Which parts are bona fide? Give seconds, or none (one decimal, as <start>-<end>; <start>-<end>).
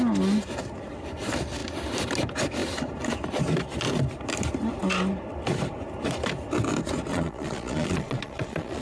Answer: 0.0-7.1